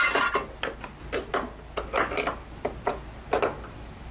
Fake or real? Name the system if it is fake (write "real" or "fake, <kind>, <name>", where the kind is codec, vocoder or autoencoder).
real